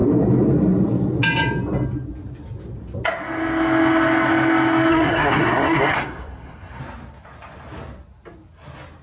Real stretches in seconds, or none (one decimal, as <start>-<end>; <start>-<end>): 0.0-4.9; 6.8-9.0